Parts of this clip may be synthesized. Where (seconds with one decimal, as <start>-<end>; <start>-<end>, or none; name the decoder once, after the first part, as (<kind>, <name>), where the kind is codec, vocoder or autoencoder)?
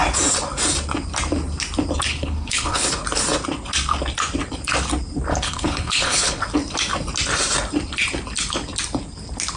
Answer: 2.1-2.9 (codec, HILCodec); 5.3-6.4